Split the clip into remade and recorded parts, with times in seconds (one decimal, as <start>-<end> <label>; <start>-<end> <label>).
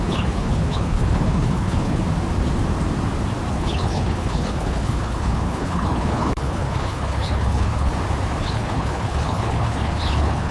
0.0-2.0 remade; 2.0-3.5 recorded; 3.5-7.9 remade; 7.9-8.4 recorded; 8.4-10.5 remade